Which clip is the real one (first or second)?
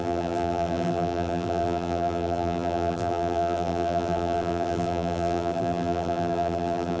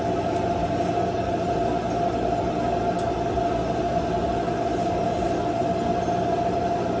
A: second